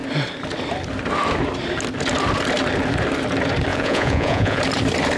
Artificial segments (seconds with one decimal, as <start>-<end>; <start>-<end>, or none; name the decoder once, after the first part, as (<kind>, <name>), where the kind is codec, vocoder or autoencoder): 3.7-4.6 (vocoder, Vocos)